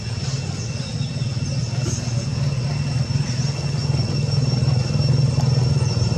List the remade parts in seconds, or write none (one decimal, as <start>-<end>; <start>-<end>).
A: none